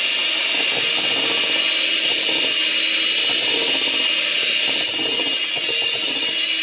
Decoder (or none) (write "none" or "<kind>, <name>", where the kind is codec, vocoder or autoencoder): none